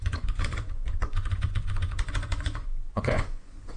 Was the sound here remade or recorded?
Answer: remade